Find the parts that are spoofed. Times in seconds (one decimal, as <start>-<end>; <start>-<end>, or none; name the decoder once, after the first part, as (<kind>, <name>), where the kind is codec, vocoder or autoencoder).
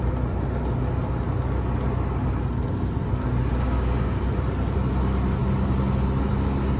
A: 3.5-4.2 (codec, DAC)